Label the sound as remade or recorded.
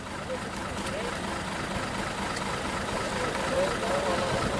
recorded